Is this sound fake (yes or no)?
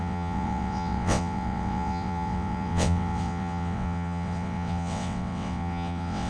yes